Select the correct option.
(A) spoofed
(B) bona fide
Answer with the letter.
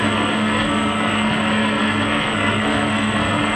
A